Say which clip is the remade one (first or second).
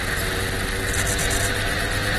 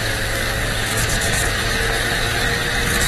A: second